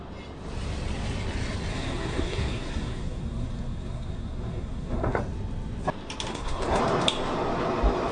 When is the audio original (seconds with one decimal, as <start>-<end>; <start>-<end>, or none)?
0.0-1.7; 5.2-6.3; 6.8-8.1